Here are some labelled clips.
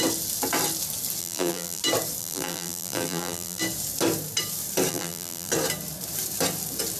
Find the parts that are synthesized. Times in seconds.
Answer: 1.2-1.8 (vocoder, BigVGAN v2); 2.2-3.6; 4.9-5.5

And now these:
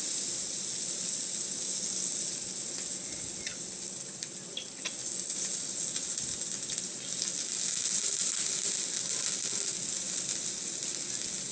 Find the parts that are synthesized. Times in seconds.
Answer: 3.5-4.3 (vocoder, BigVGAN v2)

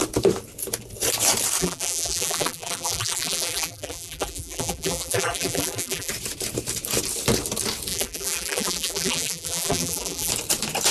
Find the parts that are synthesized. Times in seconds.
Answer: 1.6-6.1 (vocoder, BigVGAN v2); 7.9-10.3

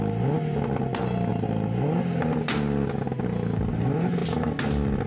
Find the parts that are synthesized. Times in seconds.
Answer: none

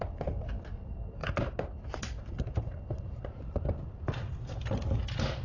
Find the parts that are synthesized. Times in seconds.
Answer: none

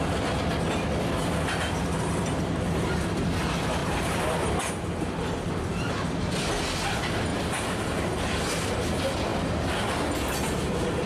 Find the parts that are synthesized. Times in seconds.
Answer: 3.8-4.7 (vocoder, BigVGAN v2); 7.3-7.8